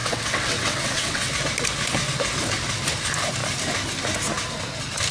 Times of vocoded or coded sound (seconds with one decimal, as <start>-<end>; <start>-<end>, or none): 0.0-1.3